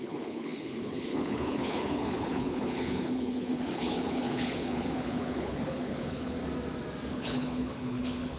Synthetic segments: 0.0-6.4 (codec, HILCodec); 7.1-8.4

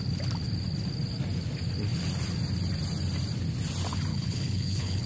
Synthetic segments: 4.1-5.1 (codec, HILCodec)

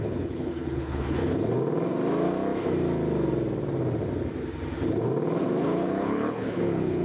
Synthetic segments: 0.0-1.2 (codec, HILCodec); 5.4-7.0

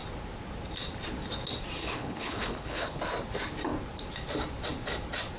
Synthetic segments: 1.8-3.0 (codec, HILCodec)